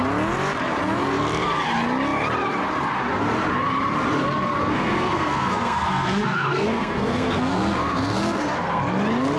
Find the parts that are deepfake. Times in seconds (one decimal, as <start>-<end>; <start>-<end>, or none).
4.6-8.8